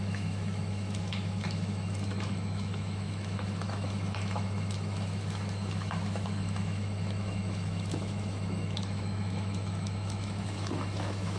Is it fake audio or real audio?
fake